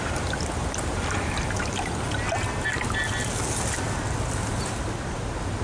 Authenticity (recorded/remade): recorded